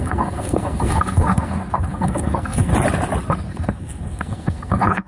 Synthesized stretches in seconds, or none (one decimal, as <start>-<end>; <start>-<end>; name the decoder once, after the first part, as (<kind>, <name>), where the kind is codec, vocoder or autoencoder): 0.0-2.7 (codec, SNAC); 3.4-5.1